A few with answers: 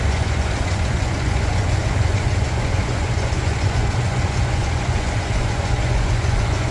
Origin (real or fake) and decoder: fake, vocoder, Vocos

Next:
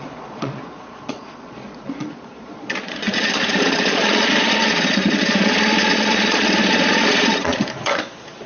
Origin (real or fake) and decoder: fake, vocoder, Vocos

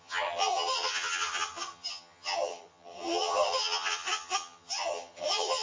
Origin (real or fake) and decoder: fake, vocoder, HiFi-GAN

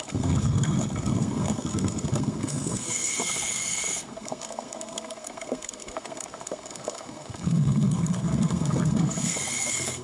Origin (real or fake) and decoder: fake, codec, SNAC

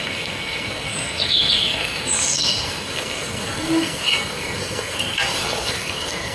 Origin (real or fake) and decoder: fake, codec, SNAC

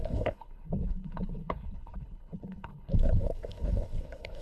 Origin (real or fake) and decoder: fake, codec, HILCodec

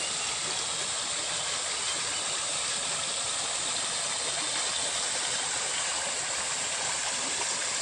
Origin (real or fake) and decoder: real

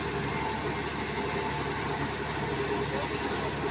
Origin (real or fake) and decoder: real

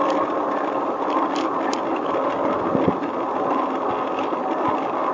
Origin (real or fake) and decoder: real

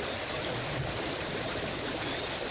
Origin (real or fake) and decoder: fake, vocoder, BigVGAN v2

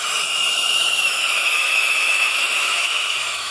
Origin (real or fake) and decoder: fake, autoencoder, DAC-VAE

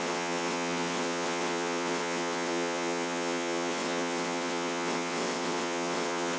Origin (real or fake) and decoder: fake, vocoder, WaveNeXt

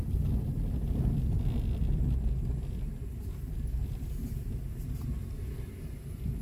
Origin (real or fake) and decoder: real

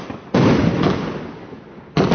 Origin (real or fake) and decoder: real